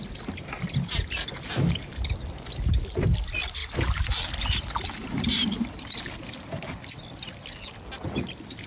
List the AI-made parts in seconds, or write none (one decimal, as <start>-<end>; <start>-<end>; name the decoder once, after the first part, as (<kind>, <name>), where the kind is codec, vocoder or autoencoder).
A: none